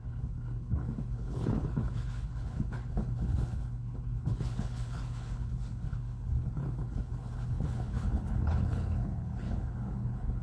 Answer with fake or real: fake